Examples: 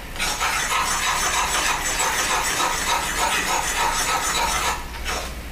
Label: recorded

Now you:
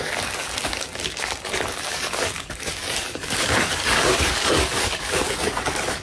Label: remade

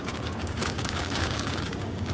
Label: remade